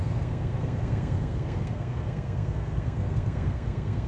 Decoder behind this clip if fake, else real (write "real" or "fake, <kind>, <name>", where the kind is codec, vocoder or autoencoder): fake, codec, SNAC